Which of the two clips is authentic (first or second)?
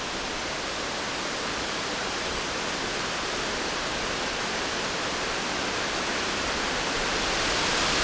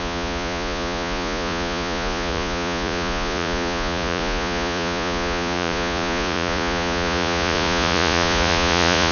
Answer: first